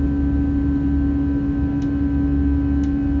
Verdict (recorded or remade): recorded